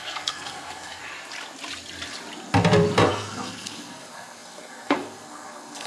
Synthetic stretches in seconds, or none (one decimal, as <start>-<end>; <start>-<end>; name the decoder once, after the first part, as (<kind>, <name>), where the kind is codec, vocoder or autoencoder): 0.0-1.0 (codec, SNAC); 3.1-5.9